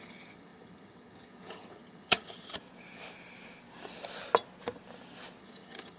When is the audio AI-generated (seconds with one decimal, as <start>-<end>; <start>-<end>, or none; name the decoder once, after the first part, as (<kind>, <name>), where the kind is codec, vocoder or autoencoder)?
0.0-2.5 (vocoder, HiFi-GAN); 5.4-6.0